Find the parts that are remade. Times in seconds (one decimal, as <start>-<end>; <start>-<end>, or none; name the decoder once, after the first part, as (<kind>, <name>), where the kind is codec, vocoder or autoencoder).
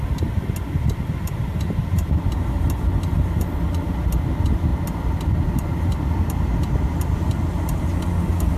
none